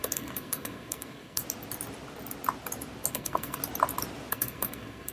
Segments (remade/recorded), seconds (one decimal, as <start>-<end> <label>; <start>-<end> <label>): 0.0-1.4 remade; 1.4-3.1 recorded; 3.1-3.6 remade; 3.6-4.3 recorded; 4.3-5.1 remade